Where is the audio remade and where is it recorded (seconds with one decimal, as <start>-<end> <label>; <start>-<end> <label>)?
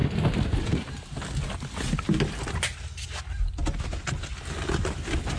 0.0-5.4 recorded